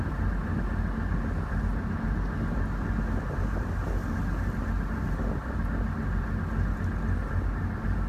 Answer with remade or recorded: recorded